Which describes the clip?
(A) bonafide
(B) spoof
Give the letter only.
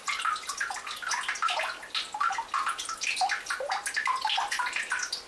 A